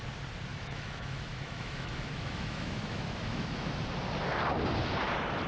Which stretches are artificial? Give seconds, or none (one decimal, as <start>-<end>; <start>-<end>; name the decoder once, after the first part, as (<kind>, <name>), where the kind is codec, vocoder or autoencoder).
0.5-3.8 (autoencoder, DAC-VAE)